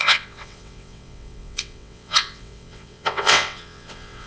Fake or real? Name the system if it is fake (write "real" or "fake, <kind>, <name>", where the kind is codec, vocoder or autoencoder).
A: fake, vocoder, WaveNeXt